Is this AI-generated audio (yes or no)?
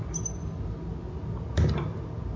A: no